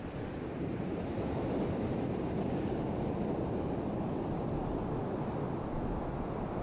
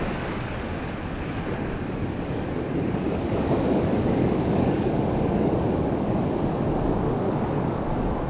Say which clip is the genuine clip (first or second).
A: first